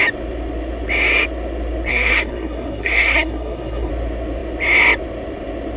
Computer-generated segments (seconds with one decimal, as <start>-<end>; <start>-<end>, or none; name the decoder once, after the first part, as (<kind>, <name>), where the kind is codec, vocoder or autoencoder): 1.9-3.9 (codec, SNAC)